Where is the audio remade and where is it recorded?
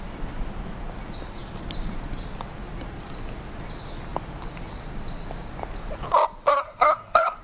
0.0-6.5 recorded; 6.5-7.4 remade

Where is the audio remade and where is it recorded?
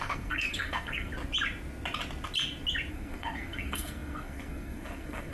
0.0-1.1 remade; 1.1-2.9 recorded; 2.9-5.3 remade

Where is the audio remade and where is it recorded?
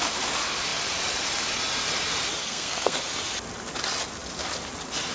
0.0-2.4 recorded; 2.4-3.0 remade; 3.0-5.1 recorded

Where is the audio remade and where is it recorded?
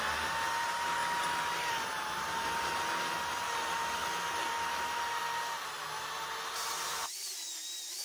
0.0-8.0 recorded